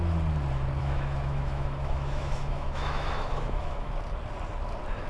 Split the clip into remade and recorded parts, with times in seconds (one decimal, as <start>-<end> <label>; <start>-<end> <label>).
0.0-0.8 recorded; 0.8-3.9 remade; 3.9-5.1 recorded